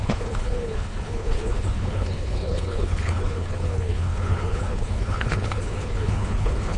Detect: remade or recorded remade